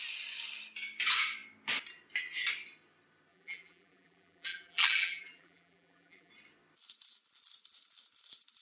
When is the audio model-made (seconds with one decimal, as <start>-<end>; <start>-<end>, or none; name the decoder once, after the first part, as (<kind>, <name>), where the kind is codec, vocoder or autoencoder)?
3.3-6.3 (vocoder, BigVGAN v2)